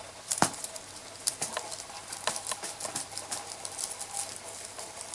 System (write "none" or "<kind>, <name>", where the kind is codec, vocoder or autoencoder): none